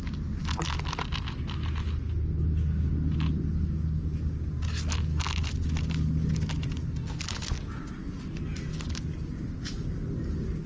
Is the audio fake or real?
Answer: real